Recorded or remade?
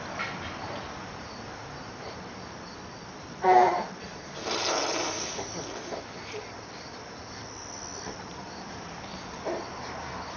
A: recorded